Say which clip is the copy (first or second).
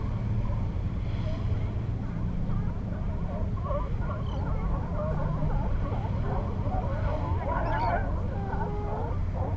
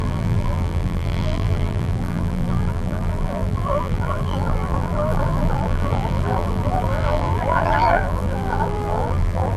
second